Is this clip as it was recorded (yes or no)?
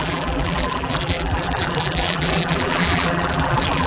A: no